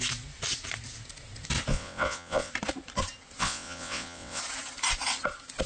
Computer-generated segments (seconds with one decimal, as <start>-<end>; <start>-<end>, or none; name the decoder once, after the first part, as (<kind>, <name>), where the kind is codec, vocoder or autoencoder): 1.7-2.5 (vocoder, WaveNeXt); 3.4-4.4